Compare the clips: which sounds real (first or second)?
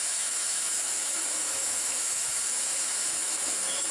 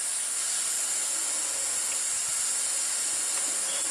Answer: second